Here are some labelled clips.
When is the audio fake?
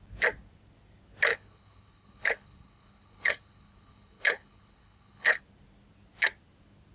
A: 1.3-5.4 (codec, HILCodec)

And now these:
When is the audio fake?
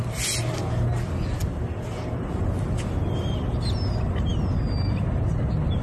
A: none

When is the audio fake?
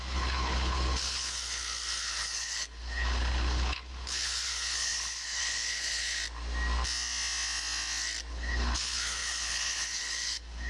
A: 0.0-6.2 (codec, HILCodec); 8.3-10.7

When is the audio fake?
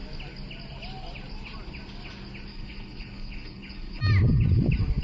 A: 2.5-4.0 (codec, HILCodec)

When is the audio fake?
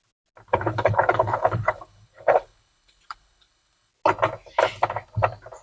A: 0.5-3.9 (codec, HILCodec)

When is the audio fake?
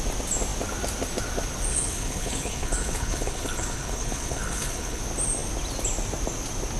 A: 1.7-5.0 (codec, HILCodec)